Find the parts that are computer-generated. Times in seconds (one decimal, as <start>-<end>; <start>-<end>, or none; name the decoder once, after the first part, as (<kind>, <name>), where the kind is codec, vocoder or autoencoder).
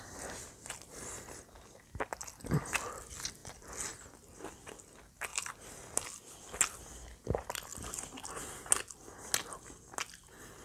none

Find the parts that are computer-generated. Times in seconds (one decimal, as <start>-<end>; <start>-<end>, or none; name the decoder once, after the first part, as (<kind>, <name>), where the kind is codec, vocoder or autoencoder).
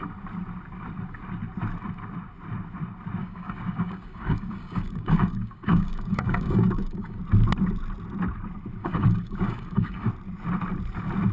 3.2-7.2 (codec, DAC); 8.8-10.1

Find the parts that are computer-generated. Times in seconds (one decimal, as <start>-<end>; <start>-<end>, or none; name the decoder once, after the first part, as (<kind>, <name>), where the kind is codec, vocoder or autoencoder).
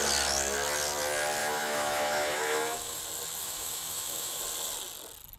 1.4-3.0 (autoencoder, DAC-VAE); 3.4-4.4